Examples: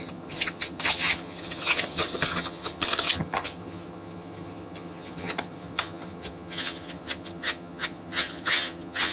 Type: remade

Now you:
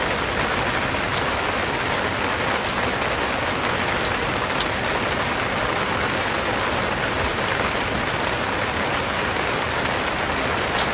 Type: recorded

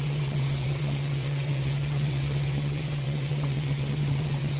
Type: remade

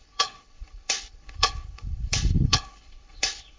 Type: remade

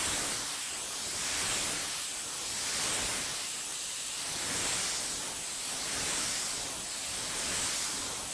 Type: recorded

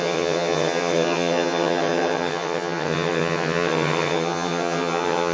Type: remade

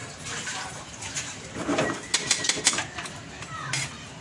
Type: remade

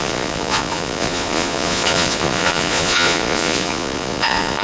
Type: remade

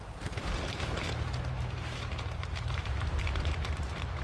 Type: remade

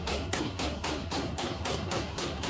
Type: remade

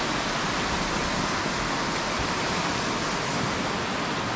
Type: recorded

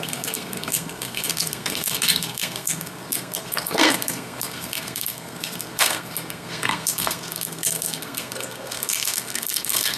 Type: remade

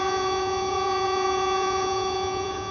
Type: remade